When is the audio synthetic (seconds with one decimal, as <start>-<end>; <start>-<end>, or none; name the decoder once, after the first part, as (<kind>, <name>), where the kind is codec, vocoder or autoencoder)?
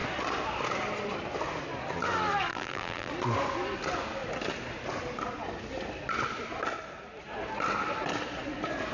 2.5-3.1 (vocoder, BigVGAN v2)